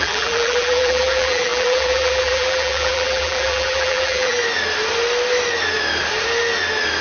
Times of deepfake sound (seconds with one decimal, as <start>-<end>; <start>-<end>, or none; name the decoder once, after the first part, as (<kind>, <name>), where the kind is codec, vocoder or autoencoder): 0.0-4.4 (vocoder, BigVGAN v2)